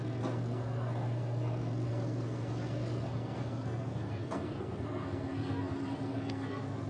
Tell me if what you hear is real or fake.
fake